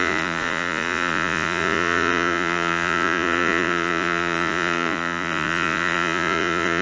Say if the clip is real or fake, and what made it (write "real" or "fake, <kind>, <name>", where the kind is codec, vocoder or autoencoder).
fake, vocoder, Vocos